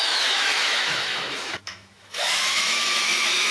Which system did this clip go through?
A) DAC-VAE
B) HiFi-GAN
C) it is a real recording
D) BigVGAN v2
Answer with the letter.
A